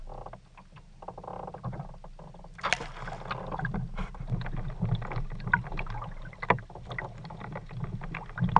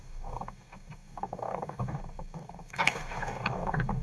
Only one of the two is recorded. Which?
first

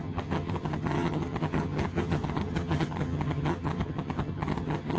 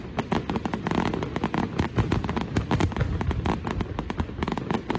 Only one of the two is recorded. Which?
second